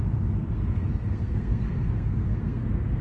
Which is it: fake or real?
fake